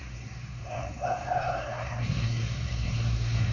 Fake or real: fake